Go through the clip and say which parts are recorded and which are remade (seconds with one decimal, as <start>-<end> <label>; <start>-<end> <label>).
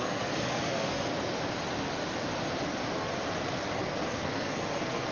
0.0-1.1 remade; 1.1-3.6 recorded; 3.6-5.1 remade